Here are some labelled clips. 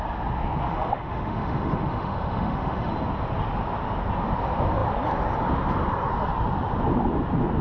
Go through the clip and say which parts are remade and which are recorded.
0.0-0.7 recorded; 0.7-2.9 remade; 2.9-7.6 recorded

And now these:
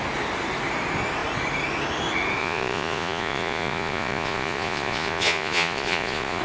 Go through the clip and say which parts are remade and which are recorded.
0.0-2.4 recorded; 2.4-6.4 remade

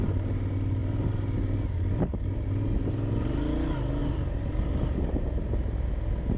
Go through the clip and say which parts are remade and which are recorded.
0.0-4.0 recorded; 4.0-5.9 remade; 5.9-6.4 recorded

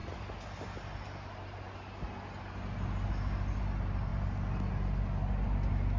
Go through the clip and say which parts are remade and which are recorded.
0.0-6.0 recorded

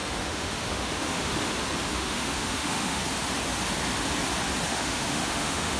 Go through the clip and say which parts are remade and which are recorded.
0.0-1.5 remade; 1.5-1.9 recorded; 1.9-3.0 remade; 3.0-4.7 recorded; 4.7-5.8 remade